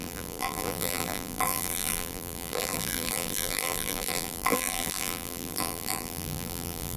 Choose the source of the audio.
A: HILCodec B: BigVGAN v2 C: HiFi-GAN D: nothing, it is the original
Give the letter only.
B